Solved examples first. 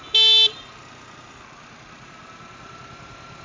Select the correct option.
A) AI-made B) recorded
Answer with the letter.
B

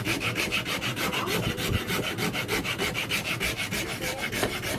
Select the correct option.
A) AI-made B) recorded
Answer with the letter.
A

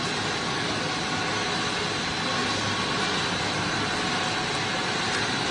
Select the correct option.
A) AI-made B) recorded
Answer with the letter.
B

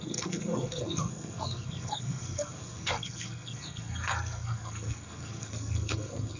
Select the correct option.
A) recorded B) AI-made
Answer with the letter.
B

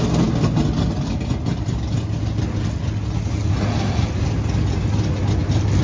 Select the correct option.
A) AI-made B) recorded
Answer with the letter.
B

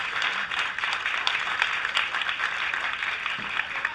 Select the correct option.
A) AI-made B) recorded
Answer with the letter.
B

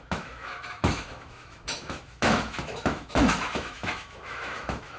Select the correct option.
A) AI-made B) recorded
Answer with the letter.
A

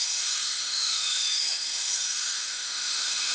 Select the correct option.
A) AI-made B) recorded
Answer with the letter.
A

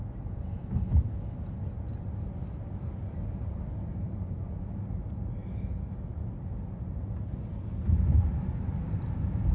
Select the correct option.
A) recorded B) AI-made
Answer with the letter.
A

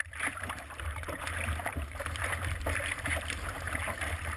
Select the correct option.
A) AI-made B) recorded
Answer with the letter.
A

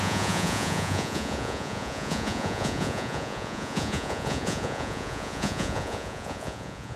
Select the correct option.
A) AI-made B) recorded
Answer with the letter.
A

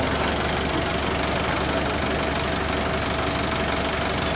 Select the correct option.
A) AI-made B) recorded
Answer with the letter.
B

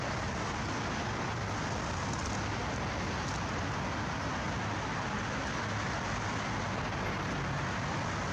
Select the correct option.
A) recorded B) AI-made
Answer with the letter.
A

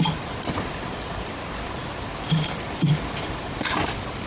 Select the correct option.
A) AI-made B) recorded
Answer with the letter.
A